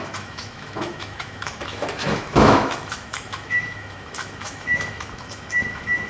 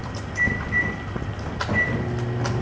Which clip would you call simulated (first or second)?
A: first